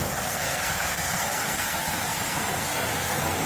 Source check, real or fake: fake